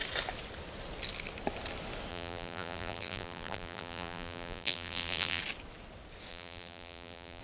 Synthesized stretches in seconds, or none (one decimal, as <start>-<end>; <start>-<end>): 2.1-5.4; 6.3-7.4